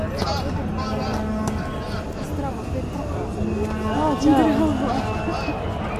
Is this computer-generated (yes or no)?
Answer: no